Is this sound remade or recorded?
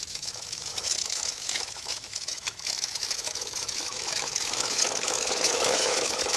remade